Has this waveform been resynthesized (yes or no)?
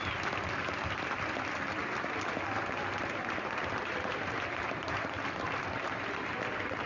no